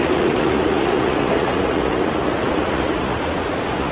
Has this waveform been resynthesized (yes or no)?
yes